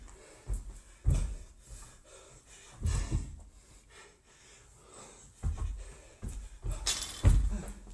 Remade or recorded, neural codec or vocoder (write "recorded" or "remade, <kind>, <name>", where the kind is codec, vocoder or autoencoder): recorded